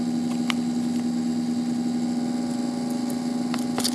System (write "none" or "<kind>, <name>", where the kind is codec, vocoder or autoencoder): none